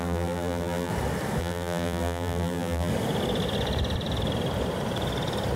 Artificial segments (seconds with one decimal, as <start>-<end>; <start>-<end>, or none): 0.0-0.9; 1.4-2.9